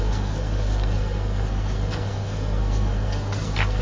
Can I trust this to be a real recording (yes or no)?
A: no